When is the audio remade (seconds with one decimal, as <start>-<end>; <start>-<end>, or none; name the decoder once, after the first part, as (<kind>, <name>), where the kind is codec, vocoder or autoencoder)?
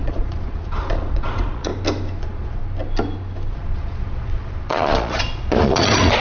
0.0-1.7 (vocoder, Vocos); 2.2-2.6; 3.5-6.2